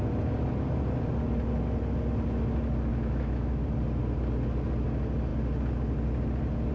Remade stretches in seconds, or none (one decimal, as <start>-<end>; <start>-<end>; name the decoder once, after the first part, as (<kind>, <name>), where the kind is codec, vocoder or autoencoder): 2.9-3.6 (autoencoder, DAC-VAE)